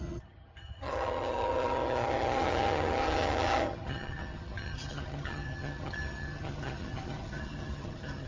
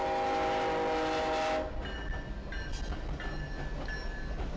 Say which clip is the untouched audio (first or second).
second